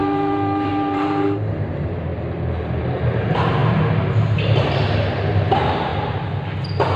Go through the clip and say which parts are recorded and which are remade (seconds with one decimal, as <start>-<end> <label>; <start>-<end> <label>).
0.0-2.1 remade; 2.1-2.8 recorded; 2.8-5.9 remade; 5.9-7.0 recorded